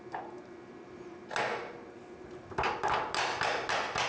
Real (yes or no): yes